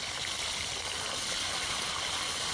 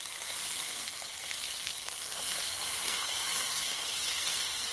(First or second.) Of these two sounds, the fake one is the second